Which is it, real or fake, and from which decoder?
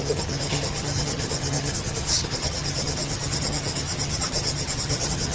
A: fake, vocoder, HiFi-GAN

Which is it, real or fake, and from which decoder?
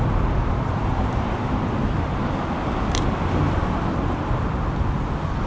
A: real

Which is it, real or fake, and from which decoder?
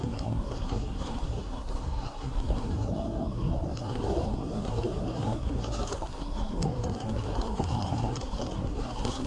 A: fake, codec, SNAC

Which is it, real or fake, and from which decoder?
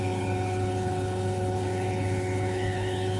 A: fake, codec, HILCodec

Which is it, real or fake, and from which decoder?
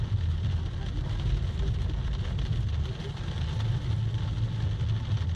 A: real